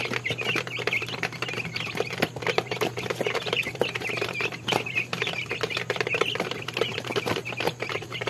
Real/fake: fake